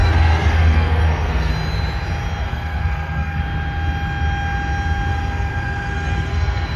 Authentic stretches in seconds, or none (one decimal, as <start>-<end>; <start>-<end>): 1.5-2.4; 3.4-5.1